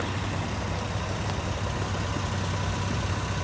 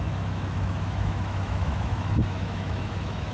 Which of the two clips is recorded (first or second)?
first